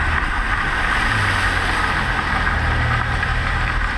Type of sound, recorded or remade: recorded